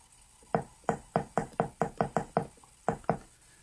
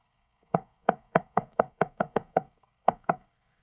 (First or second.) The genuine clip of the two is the first